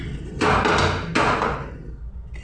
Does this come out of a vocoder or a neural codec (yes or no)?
no